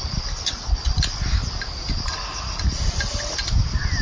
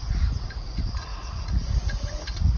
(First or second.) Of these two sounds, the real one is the first